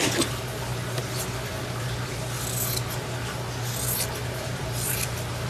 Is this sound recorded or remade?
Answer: recorded